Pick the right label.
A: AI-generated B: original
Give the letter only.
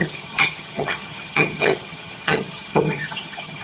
A